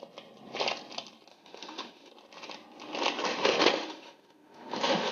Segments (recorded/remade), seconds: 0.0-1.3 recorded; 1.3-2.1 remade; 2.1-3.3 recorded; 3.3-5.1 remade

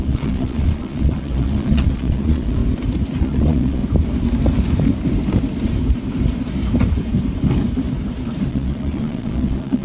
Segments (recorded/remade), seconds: 0.0-2.6 remade; 2.6-3.2 recorded; 3.2-3.8 remade; 3.8-8.5 recorded; 8.5-9.8 remade

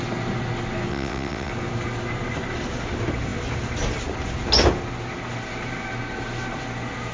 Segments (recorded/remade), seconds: 0.0-0.9 recorded; 0.9-1.5 remade; 1.5-7.1 recorded